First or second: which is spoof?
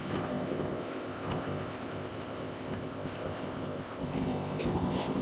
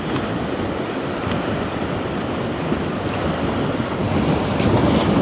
first